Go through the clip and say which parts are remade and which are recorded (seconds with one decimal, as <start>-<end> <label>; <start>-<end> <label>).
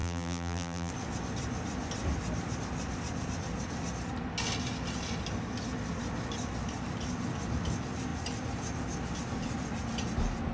0.0-0.9 remade; 0.9-10.5 recorded